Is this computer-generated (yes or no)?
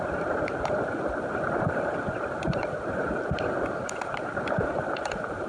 yes